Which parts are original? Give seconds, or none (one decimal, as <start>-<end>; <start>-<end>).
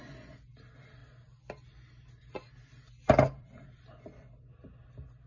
0.0-5.3